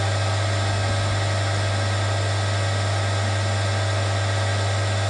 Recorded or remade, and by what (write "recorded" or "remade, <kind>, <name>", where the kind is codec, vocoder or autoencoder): recorded